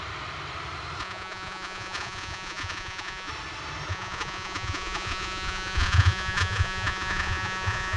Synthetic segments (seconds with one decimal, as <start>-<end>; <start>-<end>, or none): 1.0-3.3; 3.9-8.0